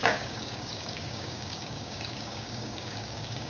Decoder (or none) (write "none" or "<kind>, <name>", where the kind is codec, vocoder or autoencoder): codec, DAC